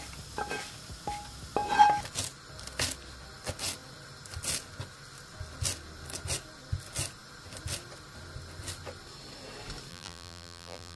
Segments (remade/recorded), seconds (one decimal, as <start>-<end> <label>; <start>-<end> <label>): 0.0-9.9 recorded; 9.9-11.0 remade